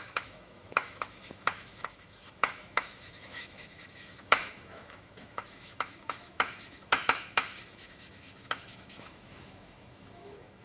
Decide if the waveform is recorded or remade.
remade